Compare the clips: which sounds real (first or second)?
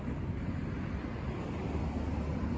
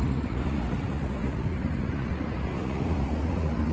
first